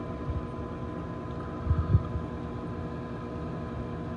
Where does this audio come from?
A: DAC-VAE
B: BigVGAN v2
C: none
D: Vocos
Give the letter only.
C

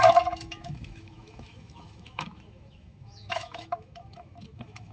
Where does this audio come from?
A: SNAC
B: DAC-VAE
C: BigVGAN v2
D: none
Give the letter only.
B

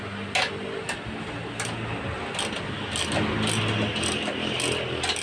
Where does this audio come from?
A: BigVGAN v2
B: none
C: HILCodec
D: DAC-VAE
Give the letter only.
B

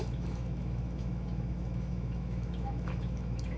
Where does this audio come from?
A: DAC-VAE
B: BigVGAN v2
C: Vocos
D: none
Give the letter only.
A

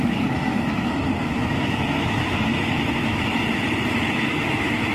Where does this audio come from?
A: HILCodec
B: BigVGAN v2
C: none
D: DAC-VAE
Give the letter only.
D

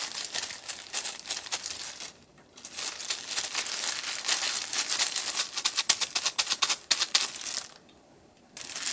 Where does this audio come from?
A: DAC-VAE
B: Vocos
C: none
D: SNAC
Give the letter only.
C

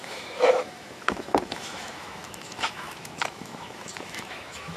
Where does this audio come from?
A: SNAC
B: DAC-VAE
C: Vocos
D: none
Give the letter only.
B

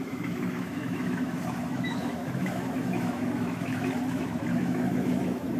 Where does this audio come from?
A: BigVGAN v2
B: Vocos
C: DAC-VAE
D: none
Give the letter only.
C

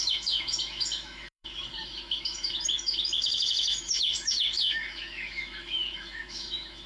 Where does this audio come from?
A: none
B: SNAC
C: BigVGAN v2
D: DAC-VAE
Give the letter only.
D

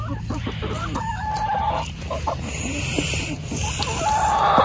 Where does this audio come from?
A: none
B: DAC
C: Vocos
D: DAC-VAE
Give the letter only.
A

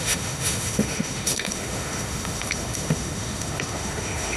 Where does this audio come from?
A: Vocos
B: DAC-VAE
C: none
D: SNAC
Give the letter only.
B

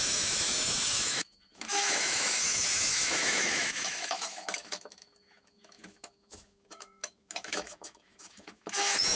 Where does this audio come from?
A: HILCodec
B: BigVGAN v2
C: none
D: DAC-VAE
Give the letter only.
D